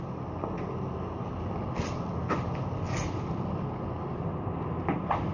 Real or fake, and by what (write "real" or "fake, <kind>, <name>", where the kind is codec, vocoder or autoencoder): real